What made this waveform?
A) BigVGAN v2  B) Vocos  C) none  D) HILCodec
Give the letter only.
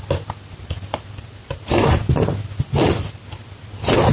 C